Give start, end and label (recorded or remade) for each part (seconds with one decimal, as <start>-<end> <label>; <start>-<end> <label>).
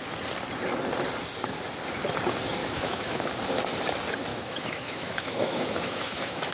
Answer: 0.0-2.6 recorded; 2.6-3.3 remade; 3.3-4.3 recorded; 4.3-6.5 remade